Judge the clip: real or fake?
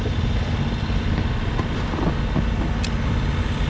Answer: real